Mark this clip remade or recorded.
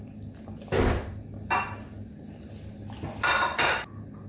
recorded